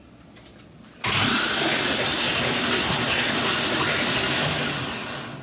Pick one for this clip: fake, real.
real